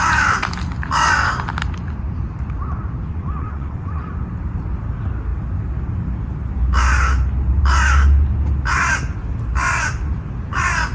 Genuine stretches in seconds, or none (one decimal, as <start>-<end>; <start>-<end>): 0.0-3.1; 4.0-10.9